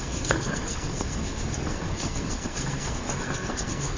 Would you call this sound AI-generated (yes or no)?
yes